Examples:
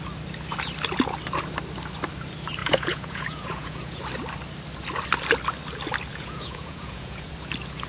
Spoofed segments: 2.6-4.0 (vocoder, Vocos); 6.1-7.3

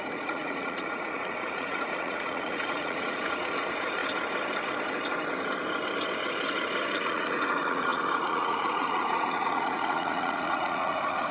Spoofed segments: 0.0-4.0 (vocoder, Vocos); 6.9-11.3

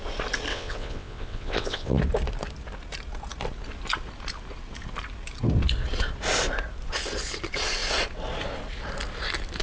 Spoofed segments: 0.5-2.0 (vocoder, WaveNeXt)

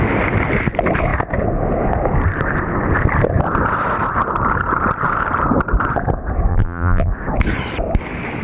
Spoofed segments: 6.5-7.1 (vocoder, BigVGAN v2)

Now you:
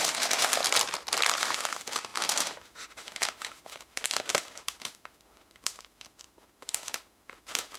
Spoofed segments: 0.0-0.6 (autoencoder, DAC-VAE); 1.4-7.8